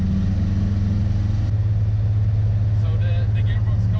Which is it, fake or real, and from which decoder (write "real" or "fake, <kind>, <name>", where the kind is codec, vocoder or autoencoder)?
real